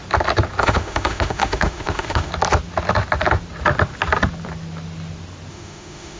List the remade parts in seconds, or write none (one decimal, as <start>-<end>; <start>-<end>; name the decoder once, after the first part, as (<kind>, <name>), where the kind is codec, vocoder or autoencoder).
0.6-2.3 (autoencoder, DAC-VAE); 5.5-6.2